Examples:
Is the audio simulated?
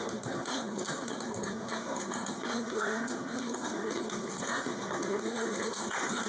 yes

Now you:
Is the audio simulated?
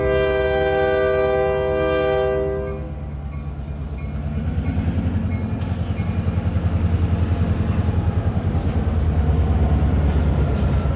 no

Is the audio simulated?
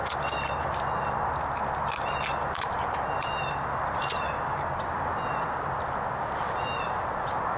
no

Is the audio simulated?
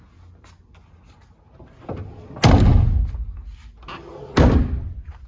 no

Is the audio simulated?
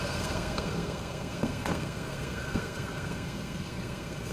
yes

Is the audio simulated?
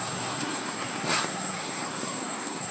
yes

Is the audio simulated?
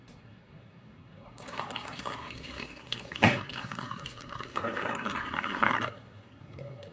yes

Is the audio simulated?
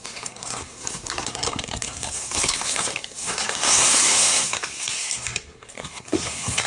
yes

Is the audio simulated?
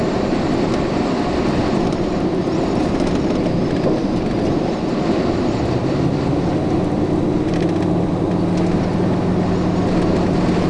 no